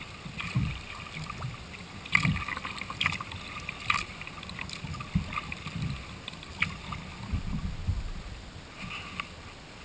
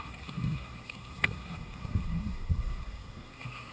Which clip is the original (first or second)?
first